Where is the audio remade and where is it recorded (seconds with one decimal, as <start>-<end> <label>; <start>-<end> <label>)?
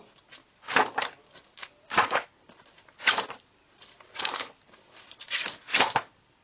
0.0-6.4 recorded